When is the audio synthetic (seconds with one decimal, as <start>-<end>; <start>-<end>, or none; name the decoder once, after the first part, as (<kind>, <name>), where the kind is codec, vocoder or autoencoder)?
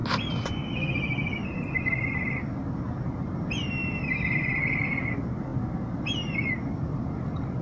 none